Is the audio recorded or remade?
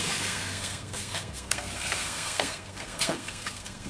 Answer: remade